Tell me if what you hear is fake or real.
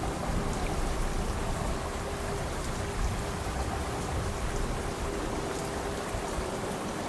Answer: real